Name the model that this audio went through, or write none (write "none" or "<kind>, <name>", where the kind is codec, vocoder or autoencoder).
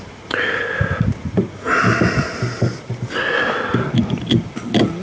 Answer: none